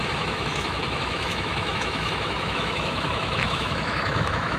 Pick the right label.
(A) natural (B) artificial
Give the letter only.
B